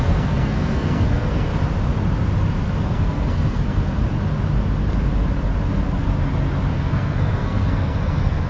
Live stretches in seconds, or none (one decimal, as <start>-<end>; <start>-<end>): 1.5-2.8; 4.0-6.7